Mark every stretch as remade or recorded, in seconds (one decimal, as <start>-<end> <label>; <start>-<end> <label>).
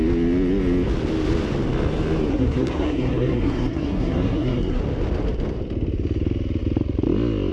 0.0-2.3 recorded; 2.3-4.8 remade; 4.8-7.5 recorded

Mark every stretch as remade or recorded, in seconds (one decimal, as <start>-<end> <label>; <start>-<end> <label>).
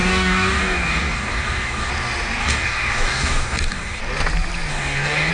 0.0-1.9 remade; 1.9-2.4 recorded; 2.4-4.0 remade; 4.0-4.7 recorded; 4.7-5.3 remade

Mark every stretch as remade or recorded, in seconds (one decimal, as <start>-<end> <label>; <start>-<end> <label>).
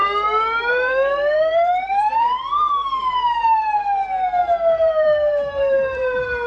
0.0-0.7 recorded; 0.7-2.8 remade; 2.8-4.4 recorded; 4.4-6.5 remade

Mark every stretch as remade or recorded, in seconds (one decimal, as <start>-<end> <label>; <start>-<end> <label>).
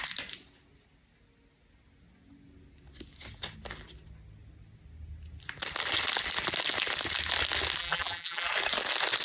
0.0-7.8 recorded; 7.8-8.5 remade; 8.5-9.2 recorded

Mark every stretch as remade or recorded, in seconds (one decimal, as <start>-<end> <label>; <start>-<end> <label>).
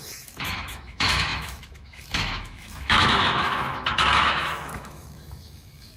0.0-6.0 remade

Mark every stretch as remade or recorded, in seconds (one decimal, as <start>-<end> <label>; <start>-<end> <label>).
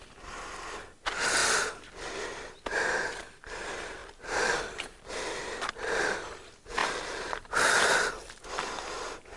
0.0-4.0 recorded; 4.0-5.1 remade; 5.1-6.8 recorded; 6.8-8.3 remade; 8.3-9.4 recorded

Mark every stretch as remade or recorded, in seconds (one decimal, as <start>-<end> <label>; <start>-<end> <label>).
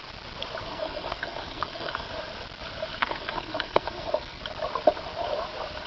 0.0-0.6 recorded; 0.6-2.1 remade; 2.1-3.0 recorded; 3.0-4.4 remade; 4.4-5.9 recorded